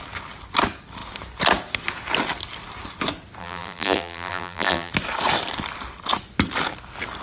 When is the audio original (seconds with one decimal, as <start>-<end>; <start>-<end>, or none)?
0.0-3.4; 4.9-7.2